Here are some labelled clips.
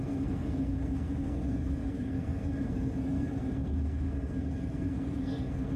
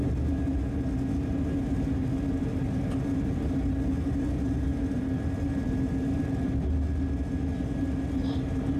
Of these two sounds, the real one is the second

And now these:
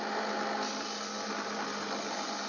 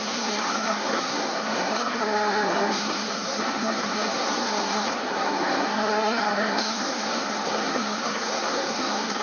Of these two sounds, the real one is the first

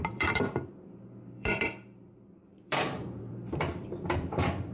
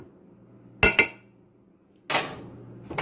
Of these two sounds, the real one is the second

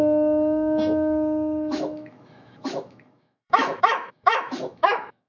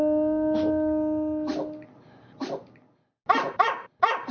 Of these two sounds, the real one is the second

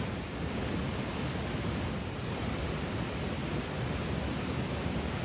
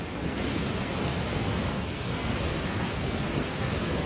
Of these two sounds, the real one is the first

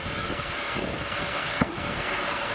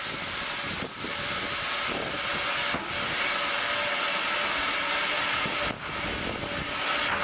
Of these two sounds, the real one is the second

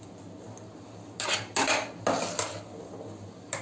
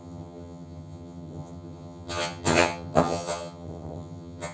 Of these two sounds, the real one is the first